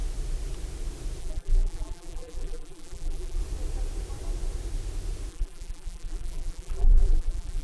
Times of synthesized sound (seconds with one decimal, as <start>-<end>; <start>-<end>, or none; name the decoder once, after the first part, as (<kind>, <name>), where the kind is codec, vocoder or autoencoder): 1.2-3.4 (vocoder, BigVGAN v2); 5.3-7.6